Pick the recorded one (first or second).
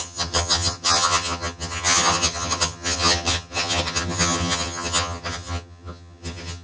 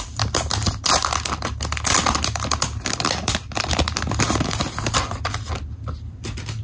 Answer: second